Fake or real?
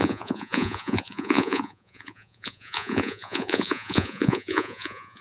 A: fake